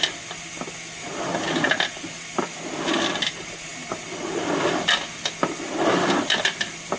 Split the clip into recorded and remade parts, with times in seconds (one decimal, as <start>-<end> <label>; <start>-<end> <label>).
0.0-7.0 recorded